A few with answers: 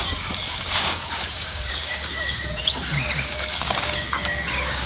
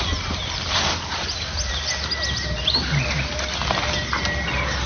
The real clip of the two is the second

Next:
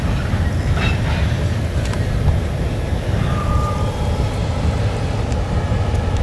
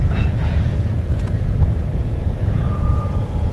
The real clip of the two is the first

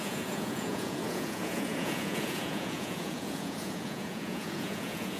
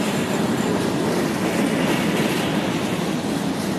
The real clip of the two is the second